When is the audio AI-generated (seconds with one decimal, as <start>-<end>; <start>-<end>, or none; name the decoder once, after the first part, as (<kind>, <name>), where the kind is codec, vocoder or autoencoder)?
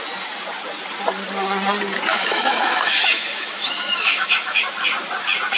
2.1-4.6 (autoencoder, DAC-VAE)